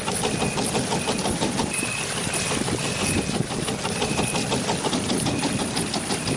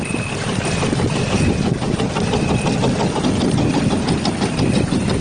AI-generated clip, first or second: second